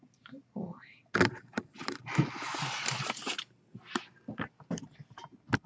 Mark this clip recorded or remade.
recorded